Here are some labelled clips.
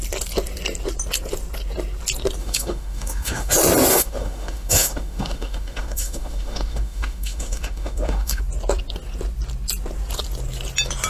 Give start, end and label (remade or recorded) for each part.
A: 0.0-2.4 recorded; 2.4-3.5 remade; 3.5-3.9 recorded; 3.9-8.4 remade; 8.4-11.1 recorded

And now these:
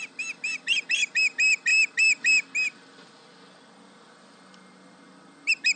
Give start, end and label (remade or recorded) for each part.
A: 0.0-5.8 recorded

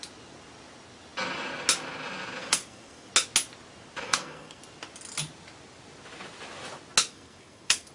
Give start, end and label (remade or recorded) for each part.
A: 0.0-2.4 recorded; 2.4-3.1 remade; 3.1-4.0 recorded; 4.0-4.6 remade; 4.6-7.1 recorded; 7.1-7.9 remade